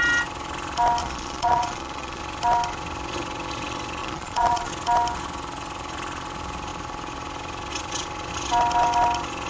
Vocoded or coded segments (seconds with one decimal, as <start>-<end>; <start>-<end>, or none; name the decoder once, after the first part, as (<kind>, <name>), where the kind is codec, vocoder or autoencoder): 1.0-2.2 (vocoder, Vocos); 4.0-4.7